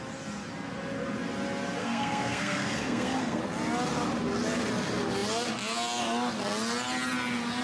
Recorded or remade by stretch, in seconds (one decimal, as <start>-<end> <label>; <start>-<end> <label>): 0.0-1.8 recorded; 1.8-3.4 remade; 3.4-7.6 recorded